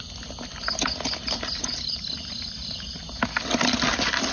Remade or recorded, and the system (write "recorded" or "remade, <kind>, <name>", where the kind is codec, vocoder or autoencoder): recorded